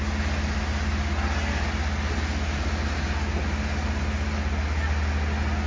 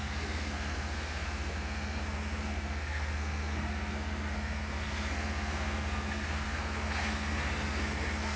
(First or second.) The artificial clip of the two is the second